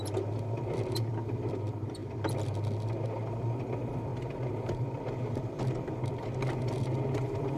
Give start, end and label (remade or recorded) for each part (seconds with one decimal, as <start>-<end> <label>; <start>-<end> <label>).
0.0-2.0 remade; 2.0-3.3 recorded; 3.3-7.6 remade